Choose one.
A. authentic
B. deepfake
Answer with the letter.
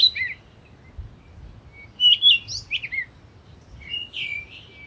A